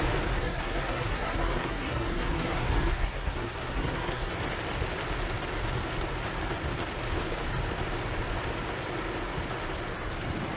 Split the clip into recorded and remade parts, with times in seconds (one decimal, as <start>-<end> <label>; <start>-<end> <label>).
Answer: 0.0-0.4 recorded; 0.4-4.3 remade; 4.3-10.6 recorded